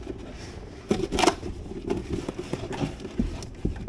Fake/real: real